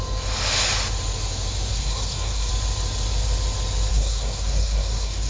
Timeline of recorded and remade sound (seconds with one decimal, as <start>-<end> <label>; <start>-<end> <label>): 0.0-1.7 recorded; 1.7-2.5 remade; 2.5-3.9 recorded; 3.9-5.3 remade